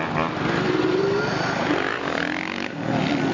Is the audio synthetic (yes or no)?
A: no